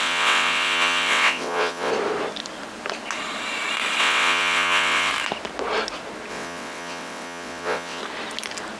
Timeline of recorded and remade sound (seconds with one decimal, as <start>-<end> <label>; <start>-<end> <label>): 0.0-1.9 remade; 1.9-4.0 recorded; 4.0-5.1 remade; 5.1-6.3 recorded; 6.3-8.0 remade; 8.0-8.8 recorded